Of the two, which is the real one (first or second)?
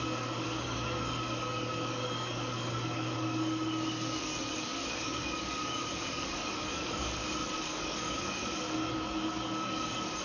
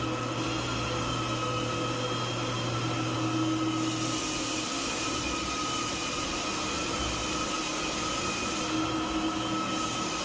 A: second